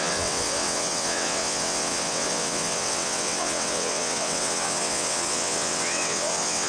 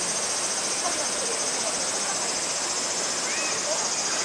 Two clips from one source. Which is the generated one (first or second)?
first